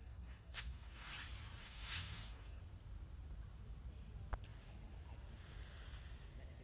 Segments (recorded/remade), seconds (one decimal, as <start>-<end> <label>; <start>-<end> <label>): 0.0-1.1 remade; 1.1-1.6 recorded; 1.6-2.6 remade; 2.6-6.6 recorded